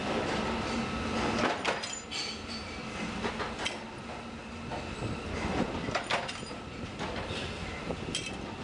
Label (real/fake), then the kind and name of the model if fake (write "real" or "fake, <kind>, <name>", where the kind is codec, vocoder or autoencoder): real